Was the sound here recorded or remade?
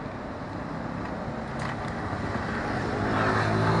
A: recorded